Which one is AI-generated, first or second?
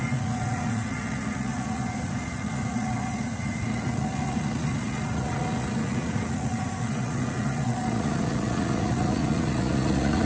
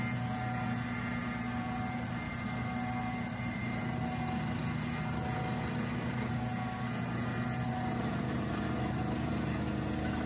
first